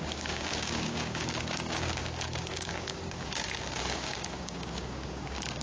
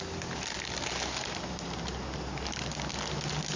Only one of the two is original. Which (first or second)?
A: second